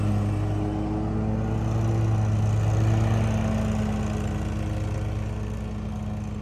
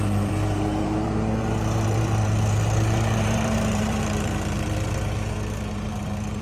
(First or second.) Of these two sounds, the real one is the first